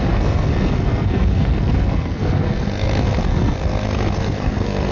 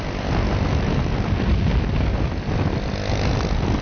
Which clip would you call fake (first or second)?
first